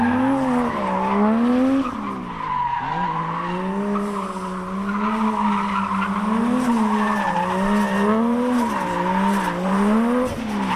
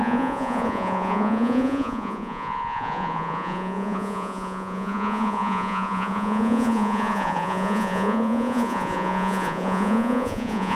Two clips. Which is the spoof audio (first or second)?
second